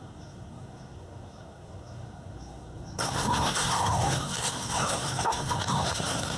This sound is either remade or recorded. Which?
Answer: remade